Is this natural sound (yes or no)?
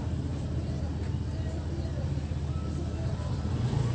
no